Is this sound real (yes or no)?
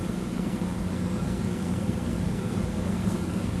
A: no